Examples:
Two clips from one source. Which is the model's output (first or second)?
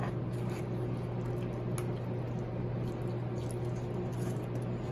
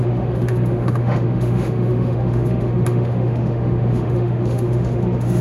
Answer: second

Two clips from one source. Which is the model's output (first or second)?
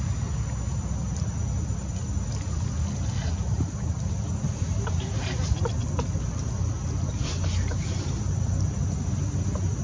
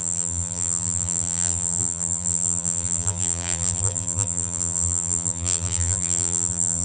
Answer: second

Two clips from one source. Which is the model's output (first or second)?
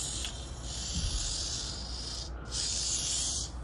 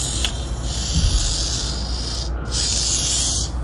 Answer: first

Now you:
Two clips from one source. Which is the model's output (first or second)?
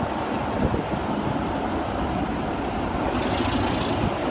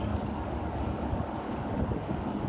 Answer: second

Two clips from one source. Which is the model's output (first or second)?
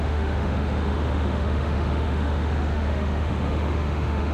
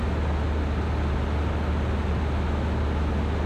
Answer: first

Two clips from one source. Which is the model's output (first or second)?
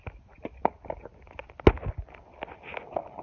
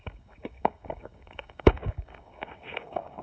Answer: second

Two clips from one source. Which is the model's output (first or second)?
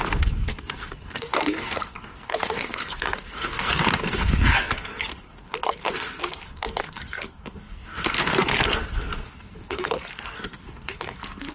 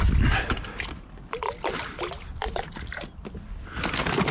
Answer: first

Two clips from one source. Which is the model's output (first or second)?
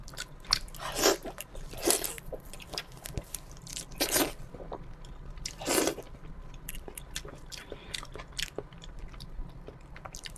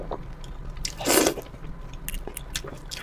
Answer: first